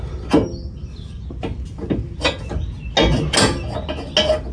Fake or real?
real